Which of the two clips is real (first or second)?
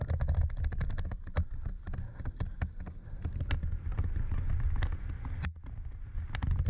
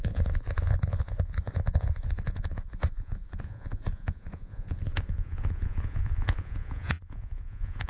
first